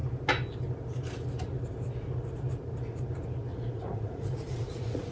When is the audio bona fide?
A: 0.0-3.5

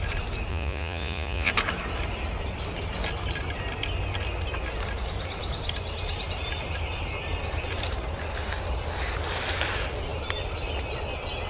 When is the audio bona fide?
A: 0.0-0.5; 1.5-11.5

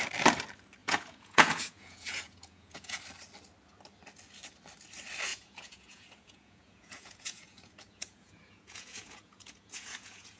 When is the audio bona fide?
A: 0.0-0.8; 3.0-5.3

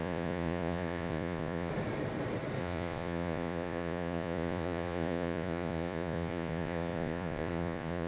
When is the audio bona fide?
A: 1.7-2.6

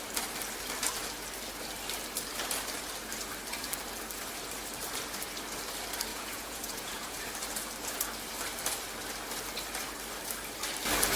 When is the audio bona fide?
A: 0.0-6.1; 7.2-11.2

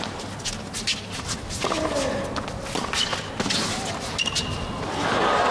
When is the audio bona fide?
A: 0.0-5.5

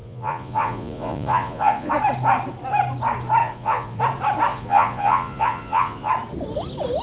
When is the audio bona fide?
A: 1.9-3.4; 4.0-4.5; 6.1-7.0

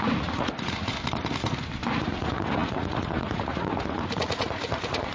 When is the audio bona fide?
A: 0.9-1.9